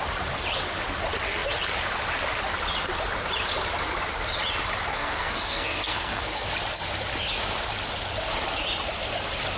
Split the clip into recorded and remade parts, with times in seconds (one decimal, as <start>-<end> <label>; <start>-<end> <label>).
0.0-4.9 recorded; 4.9-6.5 remade; 6.5-9.6 recorded

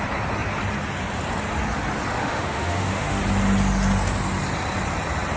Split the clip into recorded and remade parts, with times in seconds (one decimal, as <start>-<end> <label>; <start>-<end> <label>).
0.0-2.2 recorded; 2.2-3.2 remade; 3.2-5.4 recorded

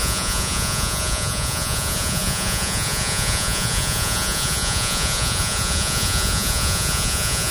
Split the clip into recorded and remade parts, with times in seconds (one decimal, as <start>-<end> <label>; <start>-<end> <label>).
0.0-7.5 remade

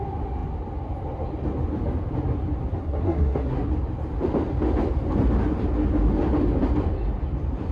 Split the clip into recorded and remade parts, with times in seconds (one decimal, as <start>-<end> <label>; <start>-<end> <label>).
0.0-2.8 recorded; 2.8-3.7 remade; 3.7-7.7 recorded

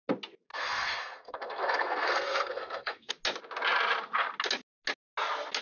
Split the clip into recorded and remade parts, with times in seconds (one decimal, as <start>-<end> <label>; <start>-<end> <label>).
0.0-0.5 recorded; 0.5-3.1 remade; 3.1-5.6 recorded

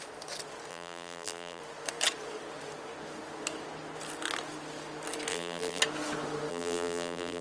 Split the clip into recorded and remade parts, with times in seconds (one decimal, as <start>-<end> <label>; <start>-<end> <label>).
0.0-0.7 recorded; 0.7-1.6 remade; 1.6-5.3 recorded; 5.3-5.8 remade; 5.8-6.5 recorded; 6.5-7.4 remade

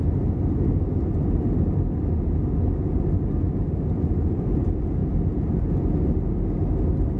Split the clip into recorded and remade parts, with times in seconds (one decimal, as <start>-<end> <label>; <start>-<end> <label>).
0.0-7.2 recorded

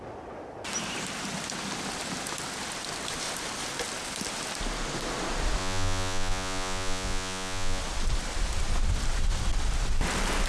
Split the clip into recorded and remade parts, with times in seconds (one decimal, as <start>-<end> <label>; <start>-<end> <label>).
0.0-5.6 recorded; 5.6-7.8 remade; 7.8-10.5 recorded